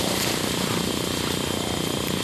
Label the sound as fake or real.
fake